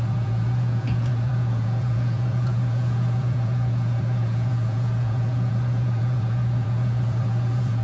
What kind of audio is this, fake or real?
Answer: fake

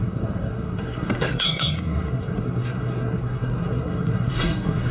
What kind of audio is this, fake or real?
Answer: fake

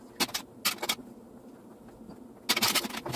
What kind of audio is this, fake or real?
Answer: real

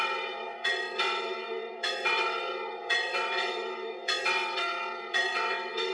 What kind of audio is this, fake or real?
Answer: fake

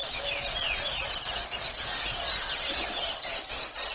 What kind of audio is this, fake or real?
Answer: real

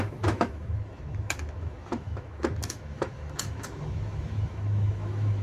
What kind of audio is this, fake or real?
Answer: fake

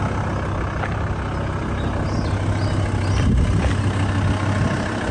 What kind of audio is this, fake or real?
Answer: real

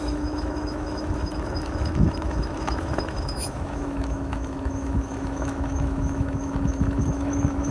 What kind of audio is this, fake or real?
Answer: fake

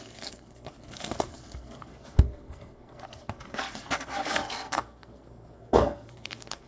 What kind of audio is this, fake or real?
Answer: fake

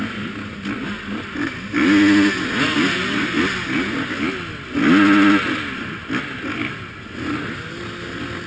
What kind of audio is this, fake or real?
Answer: real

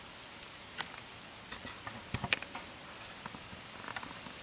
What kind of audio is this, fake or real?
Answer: real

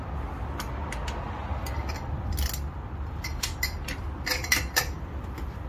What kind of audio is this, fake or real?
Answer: real